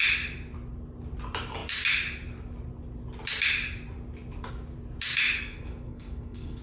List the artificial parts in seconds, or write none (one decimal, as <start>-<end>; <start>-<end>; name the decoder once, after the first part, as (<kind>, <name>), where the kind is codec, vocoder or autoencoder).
5.4-6.6 (codec, SNAC)